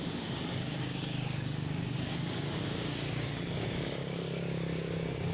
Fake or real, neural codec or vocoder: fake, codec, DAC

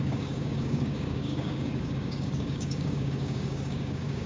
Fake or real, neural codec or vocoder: fake, codec, DAC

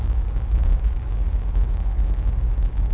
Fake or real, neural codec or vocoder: fake, codec, DAC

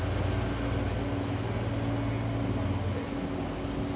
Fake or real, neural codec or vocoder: real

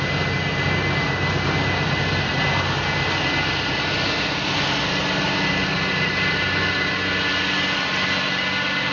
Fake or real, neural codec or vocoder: real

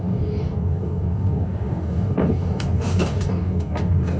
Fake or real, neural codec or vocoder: fake, codec, DAC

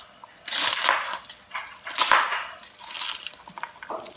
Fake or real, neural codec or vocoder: real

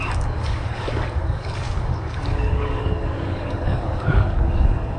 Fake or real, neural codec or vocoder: fake, codec, DAC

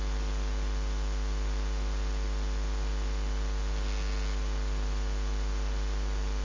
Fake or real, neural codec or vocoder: real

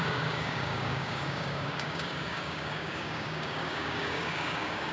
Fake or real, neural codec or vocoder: fake, codec, DAC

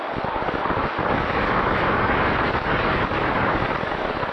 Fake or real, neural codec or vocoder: fake, codec, DAC